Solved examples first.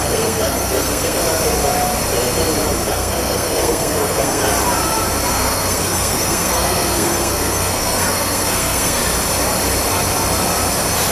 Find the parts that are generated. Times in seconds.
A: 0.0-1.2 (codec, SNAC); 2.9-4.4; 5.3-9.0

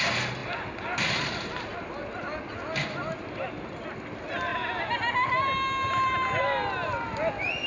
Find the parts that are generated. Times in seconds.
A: none

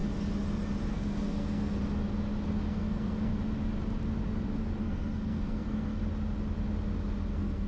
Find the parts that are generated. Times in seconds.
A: 0.9-1.8 (codec, SNAC); 2.7-3.3; 4.8-6.0; 7.3-7.7

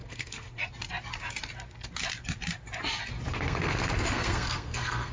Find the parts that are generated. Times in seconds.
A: 0.0-0.6 (codec, SNAC); 3.3-5.1